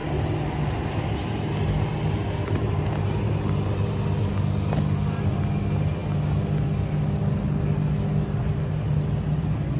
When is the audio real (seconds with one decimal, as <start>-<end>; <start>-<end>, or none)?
0.0-9.8